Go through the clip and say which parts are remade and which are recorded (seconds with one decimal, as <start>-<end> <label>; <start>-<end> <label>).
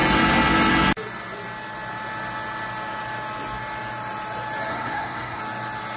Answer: 0.0-4.7 recorded; 4.7-5.4 remade; 5.4-6.0 recorded